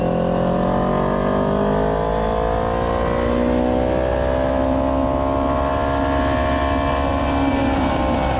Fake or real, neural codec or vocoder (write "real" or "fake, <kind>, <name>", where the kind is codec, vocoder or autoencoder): real